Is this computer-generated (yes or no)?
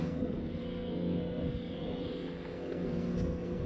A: yes